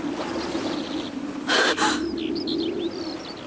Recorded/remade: recorded